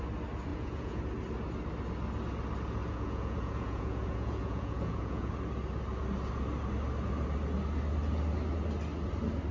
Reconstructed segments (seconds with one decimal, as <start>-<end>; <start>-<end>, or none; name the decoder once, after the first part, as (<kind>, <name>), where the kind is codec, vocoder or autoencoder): 0.5-1.0 (vocoder, Vocos); 2.8-5.3